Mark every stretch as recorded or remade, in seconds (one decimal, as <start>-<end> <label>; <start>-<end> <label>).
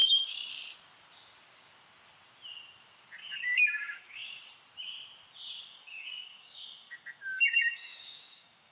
0.0-0.5 remade; 0.5-3.2 recorded; 3.2-4.5 remade; 4.5-5.7 recorded; 5.7-8.7 remade